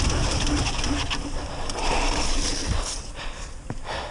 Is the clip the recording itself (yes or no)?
yes